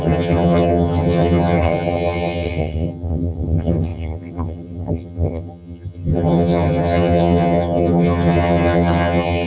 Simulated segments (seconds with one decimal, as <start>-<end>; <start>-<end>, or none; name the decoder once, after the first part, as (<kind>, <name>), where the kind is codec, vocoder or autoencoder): 0.0-9.5 (vocoder, HiFi-GAN)